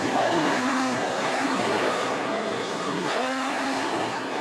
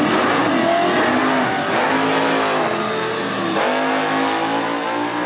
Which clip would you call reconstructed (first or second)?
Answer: first